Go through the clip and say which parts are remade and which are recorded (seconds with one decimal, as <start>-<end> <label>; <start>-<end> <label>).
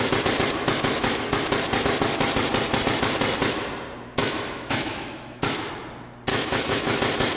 0.0-4.2 recorded; 4.2-5.7 remade; 5.7-6.3 recorded; 6.3-7.0 remade; 7.0-7.4 recorded